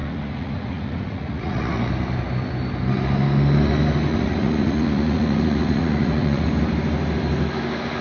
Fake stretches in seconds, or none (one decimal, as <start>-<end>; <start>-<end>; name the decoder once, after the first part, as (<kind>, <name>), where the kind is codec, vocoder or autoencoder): 0.0-1.9 (vocoder, Vocos); 4.1-6.5